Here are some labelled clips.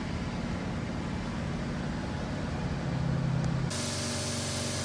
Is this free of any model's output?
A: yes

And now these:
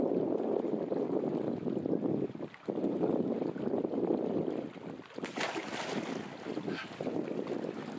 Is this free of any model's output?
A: yes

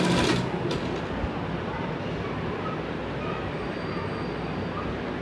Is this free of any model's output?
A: yes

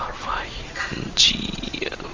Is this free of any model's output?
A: no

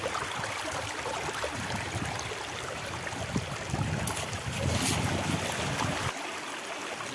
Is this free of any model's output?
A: yes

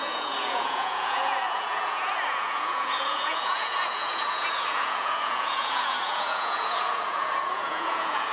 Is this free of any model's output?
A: no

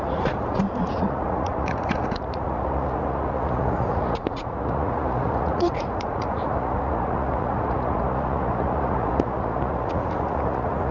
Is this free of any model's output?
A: no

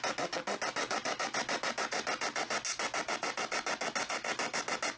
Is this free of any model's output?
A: yes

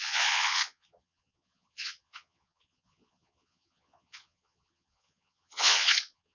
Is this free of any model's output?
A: no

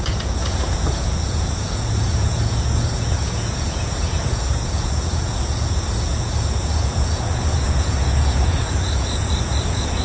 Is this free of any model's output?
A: no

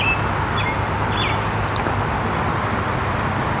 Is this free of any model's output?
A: yes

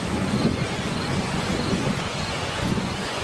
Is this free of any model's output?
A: no